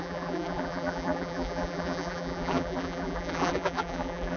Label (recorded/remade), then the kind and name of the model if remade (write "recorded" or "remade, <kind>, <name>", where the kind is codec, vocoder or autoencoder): remade, vocoder, BigVGAN v2